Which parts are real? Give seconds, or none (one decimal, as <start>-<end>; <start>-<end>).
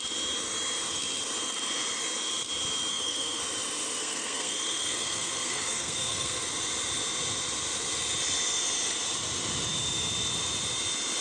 0.0-2.9; 3.4-4.0; 6.4-11.2